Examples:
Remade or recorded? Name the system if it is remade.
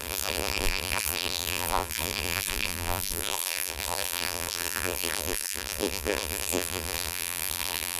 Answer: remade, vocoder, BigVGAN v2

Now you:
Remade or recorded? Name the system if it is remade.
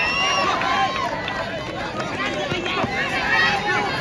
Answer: recorded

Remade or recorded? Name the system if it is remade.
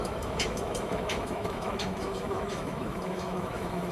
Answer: remade, autoencoder, DAC-VAE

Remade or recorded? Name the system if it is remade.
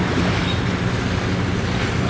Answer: recorded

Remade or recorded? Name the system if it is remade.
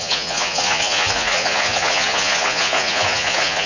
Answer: remade, vocoder, Vocos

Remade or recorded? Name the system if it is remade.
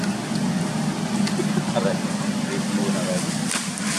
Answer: recorded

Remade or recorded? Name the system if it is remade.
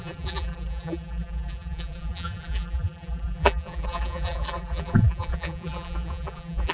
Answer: remade, vocoder, BigVGAN v2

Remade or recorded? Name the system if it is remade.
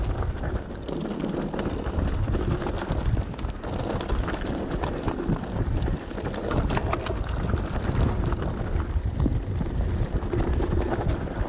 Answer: recorded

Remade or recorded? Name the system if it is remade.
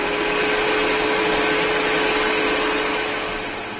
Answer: recorded